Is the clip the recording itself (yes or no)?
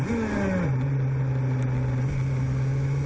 yes